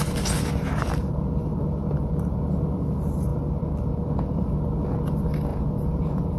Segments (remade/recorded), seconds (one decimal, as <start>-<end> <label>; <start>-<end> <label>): 0.0-5.5 recorded; 5.5-6.4 remade